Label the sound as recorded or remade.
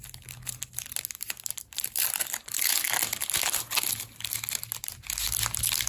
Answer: recorded